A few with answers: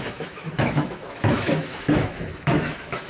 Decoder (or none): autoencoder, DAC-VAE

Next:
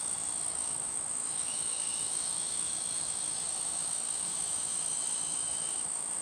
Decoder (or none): autoencoder, DAC-VAE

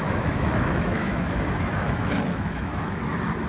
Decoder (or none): autoencoder, DAC-VAE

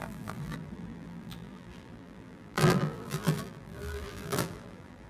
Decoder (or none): vocoder, BigVGAN v2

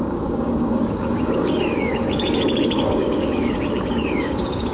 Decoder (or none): codec, DAC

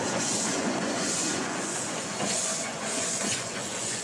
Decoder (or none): vocoder, Vocos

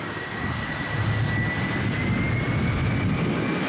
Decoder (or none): none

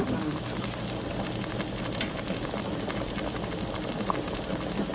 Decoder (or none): none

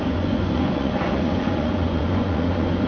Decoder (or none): vocoder, Vocos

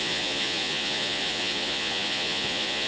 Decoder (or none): vocoder, Vocos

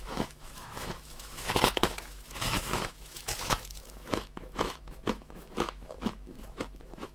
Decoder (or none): autoencoder, DAC-VAE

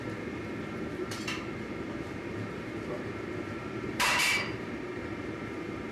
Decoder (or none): vocoder, BigVGAN v2